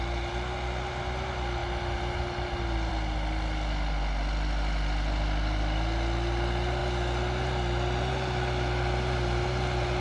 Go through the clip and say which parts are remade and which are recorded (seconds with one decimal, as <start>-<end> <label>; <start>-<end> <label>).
0.0-10.0 recorded